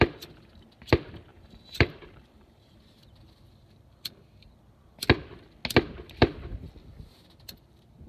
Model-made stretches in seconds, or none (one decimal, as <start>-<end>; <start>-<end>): 1.3-2.8